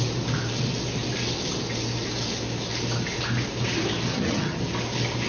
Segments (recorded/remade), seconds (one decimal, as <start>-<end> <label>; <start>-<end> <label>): 0.0-4.1 recorded; 4.1-4.6 remade; 4.6-5.3 recorded